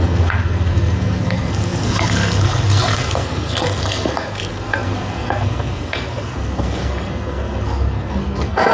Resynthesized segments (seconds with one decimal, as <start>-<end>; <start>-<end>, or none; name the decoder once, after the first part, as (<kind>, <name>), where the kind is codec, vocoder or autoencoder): 0.0-8.7 (codec, SNAC)